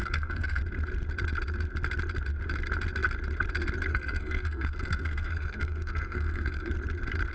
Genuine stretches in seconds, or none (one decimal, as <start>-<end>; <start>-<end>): 0.6-3.9; 6.7-7.3